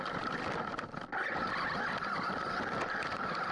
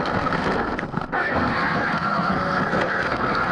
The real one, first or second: first